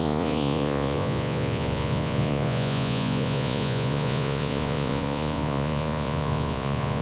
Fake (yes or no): yes